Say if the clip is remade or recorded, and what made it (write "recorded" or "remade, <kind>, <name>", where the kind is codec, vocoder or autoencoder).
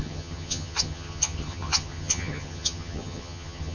remade, vocoder, HiFi-GAN